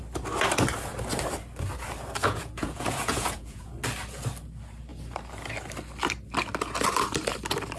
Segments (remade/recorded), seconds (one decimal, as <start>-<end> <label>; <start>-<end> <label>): 0.0-2.2 recorded; 2.2-3.7 remade; 3.7-7.8 recorded